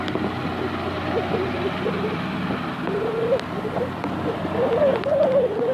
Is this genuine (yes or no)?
yes